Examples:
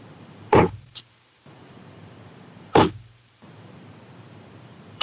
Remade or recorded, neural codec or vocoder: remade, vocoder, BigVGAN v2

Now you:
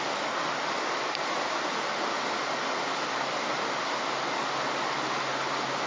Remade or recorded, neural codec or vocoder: recorded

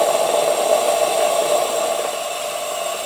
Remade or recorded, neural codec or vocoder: recorded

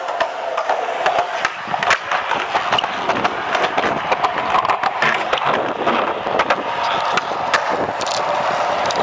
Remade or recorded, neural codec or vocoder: recorded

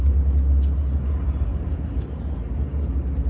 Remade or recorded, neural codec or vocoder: recorded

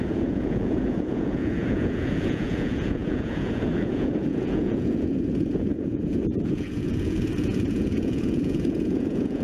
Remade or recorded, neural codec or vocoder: remade, vocoder, Vocos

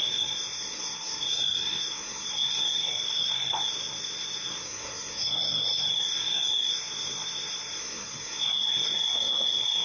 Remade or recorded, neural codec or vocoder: remade, codec, SNAC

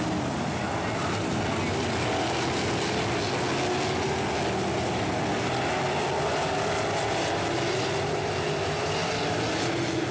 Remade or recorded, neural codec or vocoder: recorded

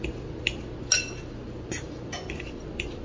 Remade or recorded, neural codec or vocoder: recorded